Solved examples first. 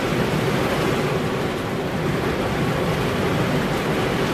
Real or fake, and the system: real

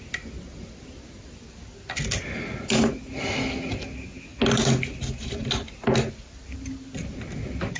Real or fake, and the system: real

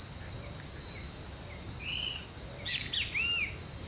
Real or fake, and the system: real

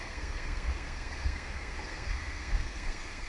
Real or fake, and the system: fake, codec, SNAC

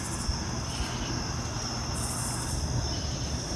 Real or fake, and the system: real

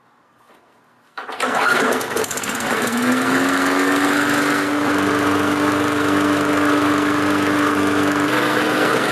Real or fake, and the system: fake, codec, SNAC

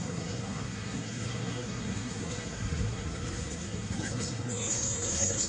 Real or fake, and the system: fake, codec, SNAC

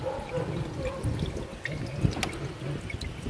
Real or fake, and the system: real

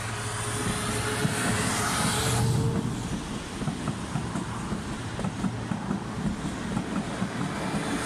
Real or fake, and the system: real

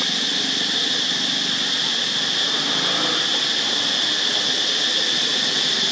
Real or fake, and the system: real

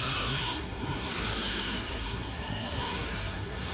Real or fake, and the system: fake, codec, SNAC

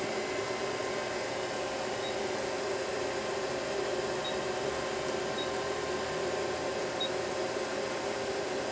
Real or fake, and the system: real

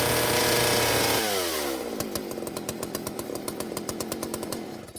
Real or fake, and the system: real